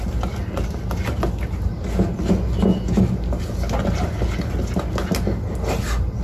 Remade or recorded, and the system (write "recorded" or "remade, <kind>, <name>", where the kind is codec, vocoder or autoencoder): recorded